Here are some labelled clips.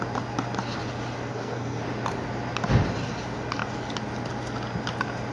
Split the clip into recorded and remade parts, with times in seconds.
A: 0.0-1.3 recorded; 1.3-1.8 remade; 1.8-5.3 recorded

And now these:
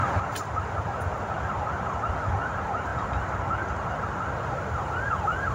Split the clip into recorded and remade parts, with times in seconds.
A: 0.0-5.5 recorded

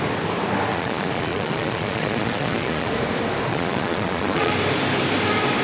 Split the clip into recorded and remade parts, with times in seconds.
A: 0.0-0.7 recorded; 0.7-2.9 remade; 2.9-3.5 recorded; 3.5-4.5 remade; 4.5-5.6 recorded

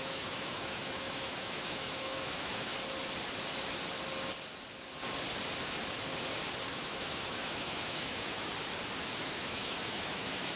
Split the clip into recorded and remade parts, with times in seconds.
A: 0.0-2.7 remade; 2.7-6.7 recorded; 6.7-8.5 remade; 8.5-9.2 recorded; 9.2-10.6 remade

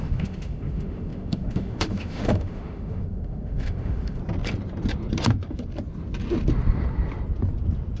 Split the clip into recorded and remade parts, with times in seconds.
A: 0.0-4.2 remade; 4.2-8.0 recorded